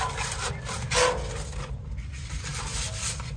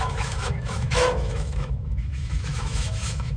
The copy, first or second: second